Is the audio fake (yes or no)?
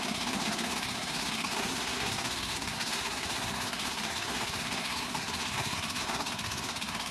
yes